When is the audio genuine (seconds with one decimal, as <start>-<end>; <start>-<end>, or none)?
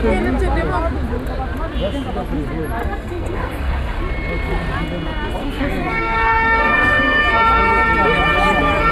0.0-2.8; 4.0-5.4; 7.2-8.9